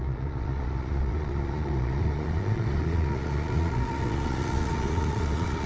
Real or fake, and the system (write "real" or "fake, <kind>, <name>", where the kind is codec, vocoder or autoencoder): fake, vocoder, Vocos